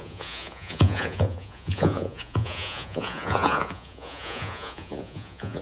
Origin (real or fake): fake